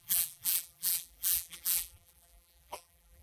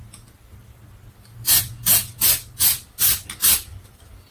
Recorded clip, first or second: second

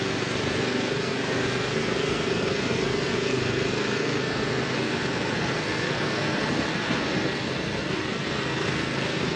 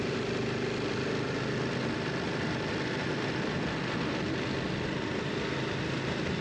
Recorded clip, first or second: second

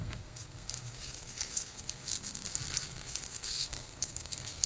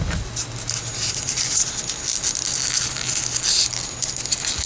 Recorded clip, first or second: second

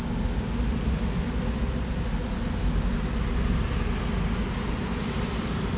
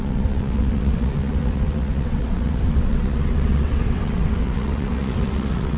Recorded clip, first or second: first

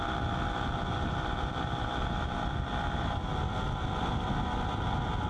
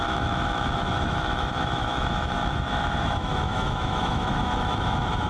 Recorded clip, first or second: first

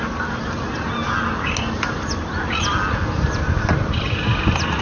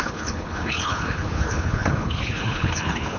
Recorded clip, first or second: first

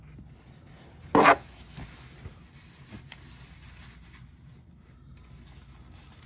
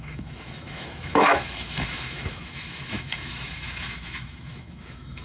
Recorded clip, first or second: first